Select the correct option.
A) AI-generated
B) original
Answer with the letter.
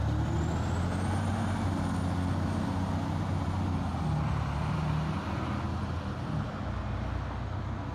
B